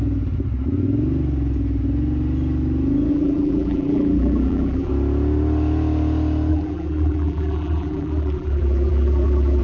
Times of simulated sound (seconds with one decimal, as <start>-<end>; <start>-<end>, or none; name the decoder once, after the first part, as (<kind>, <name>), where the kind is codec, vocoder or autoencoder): 3.1-4.9 (vocoder, BigVGAN v2); 6.5-9.6